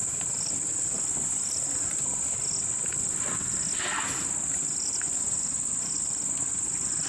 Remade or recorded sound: recorded